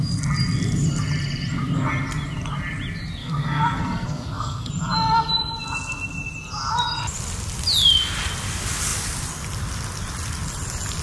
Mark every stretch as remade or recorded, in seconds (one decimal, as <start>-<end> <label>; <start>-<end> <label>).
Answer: 0.0-3.2 recorded; 3.2-4.7 remade; 4.7-11.0 recorded